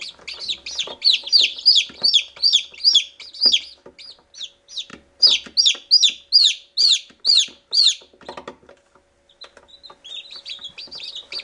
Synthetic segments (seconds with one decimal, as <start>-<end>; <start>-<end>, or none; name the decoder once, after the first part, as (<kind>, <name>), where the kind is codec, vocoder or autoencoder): none